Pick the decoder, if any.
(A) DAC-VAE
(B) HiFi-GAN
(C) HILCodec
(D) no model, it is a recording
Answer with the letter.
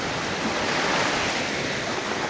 D